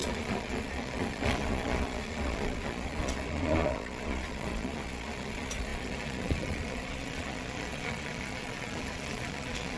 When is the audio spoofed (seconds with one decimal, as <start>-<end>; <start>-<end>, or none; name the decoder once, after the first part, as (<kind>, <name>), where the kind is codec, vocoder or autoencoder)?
0.0-9.8 (vocoder, Vocos)